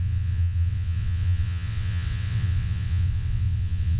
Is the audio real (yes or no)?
no